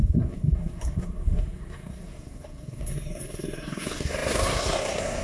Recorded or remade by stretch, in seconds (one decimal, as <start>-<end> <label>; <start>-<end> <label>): 0.0-5.2 remade